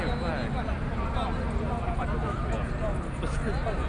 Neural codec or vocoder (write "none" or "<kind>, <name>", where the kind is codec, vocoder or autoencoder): none